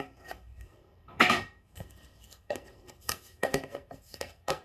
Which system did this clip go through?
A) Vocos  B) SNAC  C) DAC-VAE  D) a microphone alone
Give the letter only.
B